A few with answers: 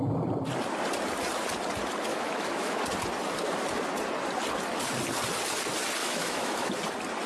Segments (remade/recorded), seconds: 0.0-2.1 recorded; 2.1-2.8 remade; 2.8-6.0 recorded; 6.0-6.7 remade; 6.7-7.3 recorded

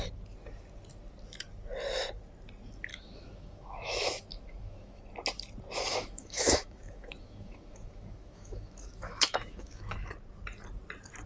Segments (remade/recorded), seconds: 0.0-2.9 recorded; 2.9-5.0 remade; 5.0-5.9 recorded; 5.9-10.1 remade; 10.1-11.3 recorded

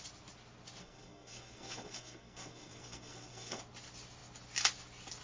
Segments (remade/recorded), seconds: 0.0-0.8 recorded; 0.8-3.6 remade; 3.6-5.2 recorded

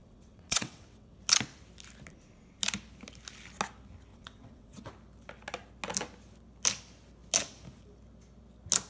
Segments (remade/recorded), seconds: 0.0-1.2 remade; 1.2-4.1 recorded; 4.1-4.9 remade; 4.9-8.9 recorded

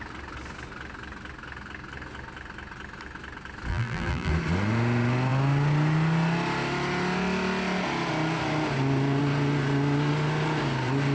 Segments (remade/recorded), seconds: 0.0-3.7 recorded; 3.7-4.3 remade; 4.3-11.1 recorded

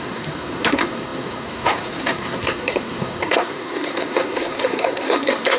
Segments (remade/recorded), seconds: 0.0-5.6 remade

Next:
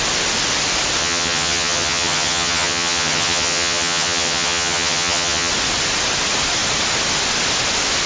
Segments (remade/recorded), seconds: 0.0-1.0 recorded; 1.0-5.5 remade; 5.5-8.1 recorded